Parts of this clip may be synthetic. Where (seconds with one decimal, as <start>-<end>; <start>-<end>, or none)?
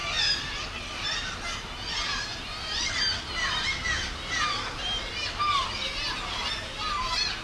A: 2.3-2.9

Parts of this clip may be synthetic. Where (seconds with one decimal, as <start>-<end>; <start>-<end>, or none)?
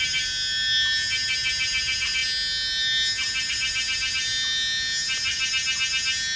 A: none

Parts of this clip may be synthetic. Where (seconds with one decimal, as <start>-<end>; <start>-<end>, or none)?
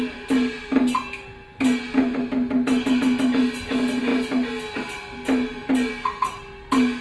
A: none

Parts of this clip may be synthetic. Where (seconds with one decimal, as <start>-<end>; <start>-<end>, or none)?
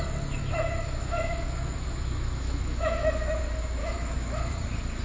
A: 0.4-3.4; 3.8-4.5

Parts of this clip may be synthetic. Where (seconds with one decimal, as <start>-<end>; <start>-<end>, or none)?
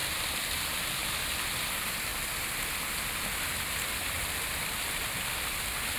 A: none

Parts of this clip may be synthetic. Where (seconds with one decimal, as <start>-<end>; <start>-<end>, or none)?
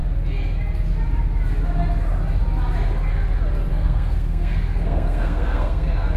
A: 3.7-6.2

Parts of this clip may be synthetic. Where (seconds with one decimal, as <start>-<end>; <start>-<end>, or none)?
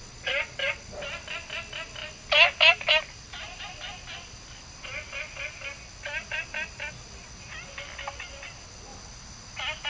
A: none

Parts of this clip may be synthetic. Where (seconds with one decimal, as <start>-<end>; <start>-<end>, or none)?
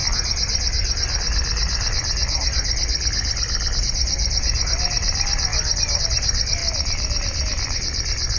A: 3.8-5.5; 6.0-8.4